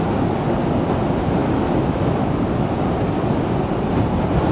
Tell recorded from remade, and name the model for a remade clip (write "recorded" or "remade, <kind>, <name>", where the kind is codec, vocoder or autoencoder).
recorded